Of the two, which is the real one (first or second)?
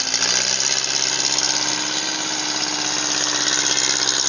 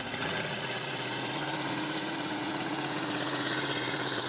first